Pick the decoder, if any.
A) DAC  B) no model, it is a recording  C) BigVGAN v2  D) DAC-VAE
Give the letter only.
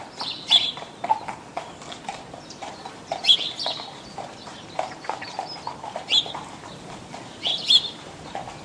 C